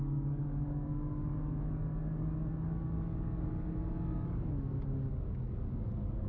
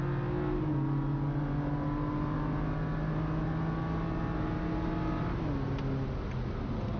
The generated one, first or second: first